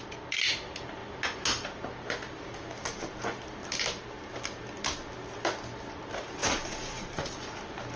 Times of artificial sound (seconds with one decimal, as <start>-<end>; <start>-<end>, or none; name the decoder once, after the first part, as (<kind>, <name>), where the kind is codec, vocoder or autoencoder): 6.4-7.6 (vocoder, Vocos)